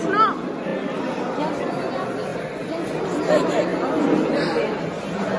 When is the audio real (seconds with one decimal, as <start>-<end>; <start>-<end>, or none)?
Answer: 0.0-5.4